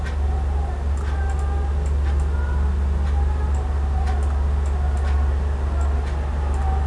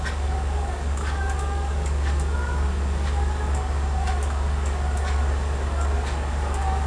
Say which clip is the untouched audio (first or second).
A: first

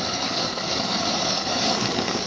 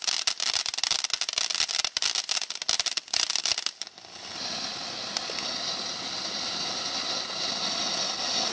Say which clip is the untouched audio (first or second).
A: second